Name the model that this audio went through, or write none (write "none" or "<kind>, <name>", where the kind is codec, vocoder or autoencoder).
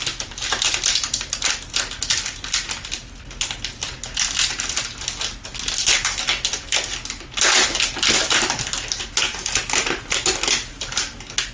none